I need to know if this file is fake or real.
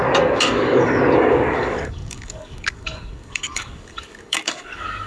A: fake